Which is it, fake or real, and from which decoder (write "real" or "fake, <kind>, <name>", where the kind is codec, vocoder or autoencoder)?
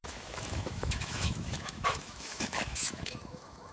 fake, autoencoder, DAC-VAE